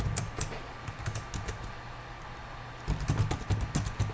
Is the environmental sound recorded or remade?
recorded